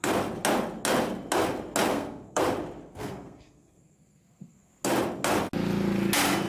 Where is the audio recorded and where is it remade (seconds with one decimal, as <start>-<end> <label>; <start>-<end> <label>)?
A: 0.0-1.9 recorded; 1.9-2.4 remade; 2.4-2.8 recorded; 2.8-4.7 remade; 4.7-6.5 recorded